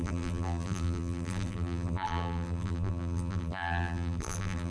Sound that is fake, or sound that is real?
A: fake